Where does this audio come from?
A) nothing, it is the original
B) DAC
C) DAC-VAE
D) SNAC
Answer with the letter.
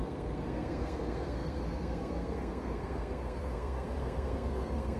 D